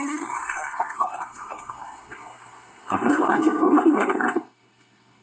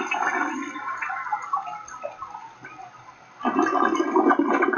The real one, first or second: second